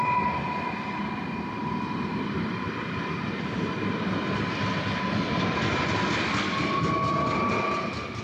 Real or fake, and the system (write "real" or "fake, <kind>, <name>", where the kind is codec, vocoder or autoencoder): real